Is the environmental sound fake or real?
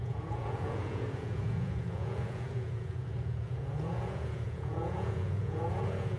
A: fake